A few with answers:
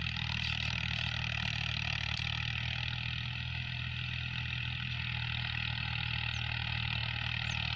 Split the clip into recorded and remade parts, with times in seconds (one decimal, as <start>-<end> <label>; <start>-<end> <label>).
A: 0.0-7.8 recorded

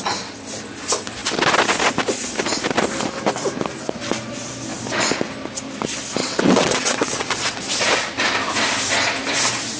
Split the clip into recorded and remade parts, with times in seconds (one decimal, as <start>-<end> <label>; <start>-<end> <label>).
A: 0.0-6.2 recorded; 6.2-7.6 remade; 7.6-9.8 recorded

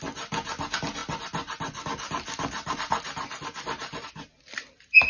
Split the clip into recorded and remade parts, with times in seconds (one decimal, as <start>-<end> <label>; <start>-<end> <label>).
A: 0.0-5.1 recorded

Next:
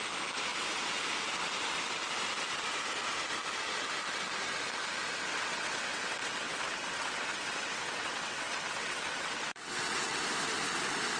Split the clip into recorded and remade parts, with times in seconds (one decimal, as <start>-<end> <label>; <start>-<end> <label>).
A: 0.0-5.3 recorded; 5.3-10.2 remade; 10.2-11.2 recorded